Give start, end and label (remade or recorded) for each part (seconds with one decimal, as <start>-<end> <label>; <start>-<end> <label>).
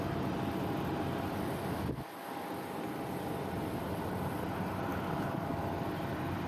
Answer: 0.0-4.9 recorded; 4.9-5.6 remade; 5.6-6.5 recorded